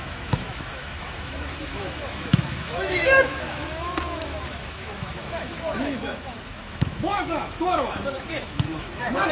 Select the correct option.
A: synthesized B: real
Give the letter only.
A